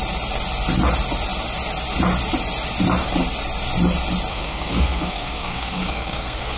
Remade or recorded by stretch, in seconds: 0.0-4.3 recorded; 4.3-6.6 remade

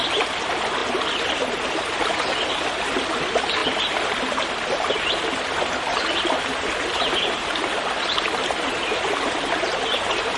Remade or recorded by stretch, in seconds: 0.0-10.4 recorded

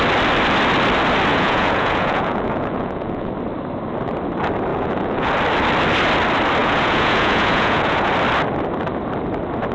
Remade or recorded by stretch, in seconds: 0.0-1.3 recorded; 1.3-3.3 remade; 3.3-4.7 recorded; 4.7-5.3 remade; 5.3-6.6 recorded; 6.6-8.1 remade; 8.1-9.7 recorded

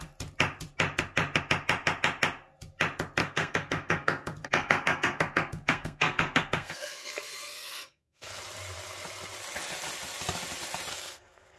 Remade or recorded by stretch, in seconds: 0.0-3.2 recorded; 3.2-8.4 remade; 8.4-10.9 recorded; 10.9-11.6 remade

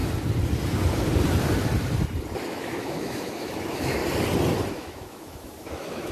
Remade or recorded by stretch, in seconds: 0.0-2.5 recorded; 2.5-4.0 remade; 4.0-4.7 recorded; 4.7-6.1 remade

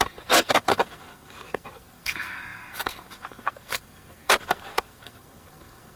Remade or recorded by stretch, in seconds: 0.0-6.0 remade

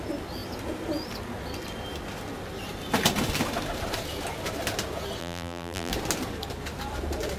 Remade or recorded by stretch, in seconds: 0.0-5.2 recorded; 5.2-5.9 remade; 5.9-7.4 recorded